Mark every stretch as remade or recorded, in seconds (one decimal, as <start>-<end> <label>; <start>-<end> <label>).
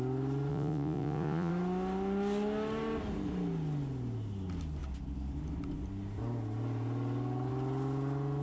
0.0-0.5 recorded; 0.5-1.5 remade; 1.5-8.4 recorded